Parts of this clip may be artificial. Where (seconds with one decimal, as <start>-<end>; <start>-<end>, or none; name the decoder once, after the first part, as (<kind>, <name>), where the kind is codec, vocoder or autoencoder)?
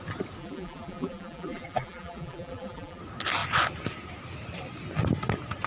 0.4-3.0 (vocoder, BigVGAN v2)